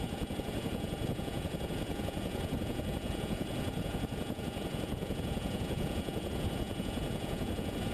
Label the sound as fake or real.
fake